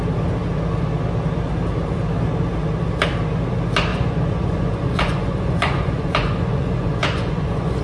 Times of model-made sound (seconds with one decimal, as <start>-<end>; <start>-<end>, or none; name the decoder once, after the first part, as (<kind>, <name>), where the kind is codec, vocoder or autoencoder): 3.9-7.8 (vocoder, Vocos)